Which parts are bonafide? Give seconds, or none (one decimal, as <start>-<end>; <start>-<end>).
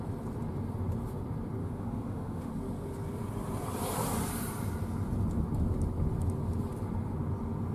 0.0-1.6; 2.5-7.7